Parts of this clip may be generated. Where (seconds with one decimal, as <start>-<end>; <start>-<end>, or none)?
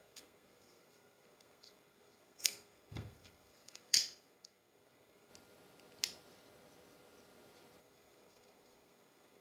0.0-5.3; 7.8-9.4